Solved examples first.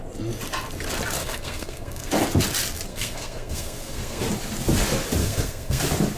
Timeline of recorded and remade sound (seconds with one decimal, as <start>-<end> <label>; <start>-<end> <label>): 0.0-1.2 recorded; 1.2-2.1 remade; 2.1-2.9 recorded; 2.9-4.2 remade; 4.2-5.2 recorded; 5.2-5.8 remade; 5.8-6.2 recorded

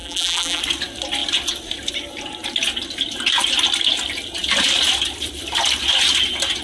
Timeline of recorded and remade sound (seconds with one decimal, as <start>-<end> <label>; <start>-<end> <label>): 0.0-0.6 remade; 0.6-6.6 recorded

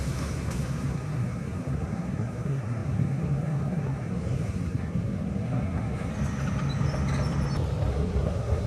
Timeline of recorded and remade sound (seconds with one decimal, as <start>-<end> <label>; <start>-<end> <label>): 0.0-6.1 remade; 6.1-7.9 recorded; 7.9-8.7 remade

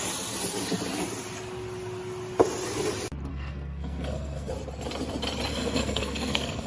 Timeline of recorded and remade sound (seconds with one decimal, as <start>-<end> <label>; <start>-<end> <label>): 0.0-3.3 recorded; 3.3-4.5 remade; 4.5-5.5 recorded; 5.5-6.7 remade